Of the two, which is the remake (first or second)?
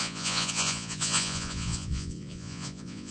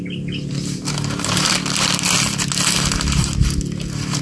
first